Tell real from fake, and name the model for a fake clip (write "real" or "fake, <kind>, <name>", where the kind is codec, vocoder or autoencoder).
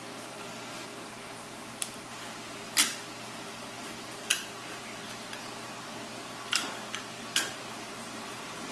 real